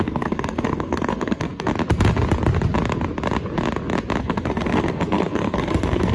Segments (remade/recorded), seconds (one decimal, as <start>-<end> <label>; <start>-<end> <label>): 0.0-1.7 remade; 1.7-4.2 recorded; 4.2-6.1 remade